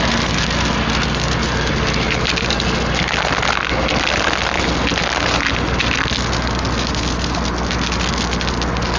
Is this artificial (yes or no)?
no